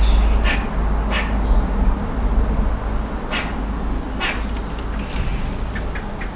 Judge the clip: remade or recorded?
recorded